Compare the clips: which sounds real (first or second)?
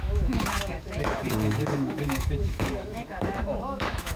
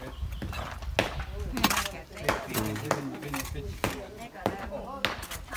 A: second